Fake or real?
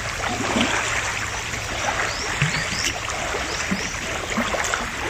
real